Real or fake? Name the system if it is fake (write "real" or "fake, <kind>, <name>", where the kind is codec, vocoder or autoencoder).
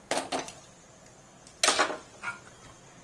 real